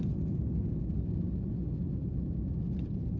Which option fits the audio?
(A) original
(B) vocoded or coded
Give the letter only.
A